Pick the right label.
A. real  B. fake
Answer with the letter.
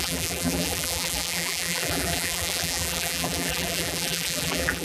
B